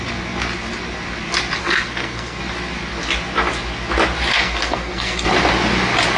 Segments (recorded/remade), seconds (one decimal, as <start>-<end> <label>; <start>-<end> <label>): 0.0-1.6 recorded; 1.6-2.4 remade; 2.4-4.3 recorded; 4.3-5.3 remade; 5.3-6.2 recorded